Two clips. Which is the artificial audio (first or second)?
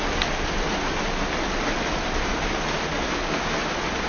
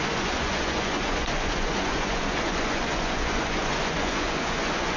second